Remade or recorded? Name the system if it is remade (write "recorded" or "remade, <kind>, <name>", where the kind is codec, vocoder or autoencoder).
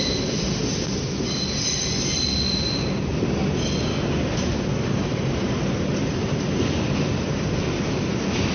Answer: recorded